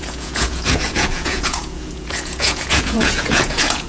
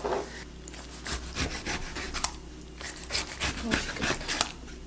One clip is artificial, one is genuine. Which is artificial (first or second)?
first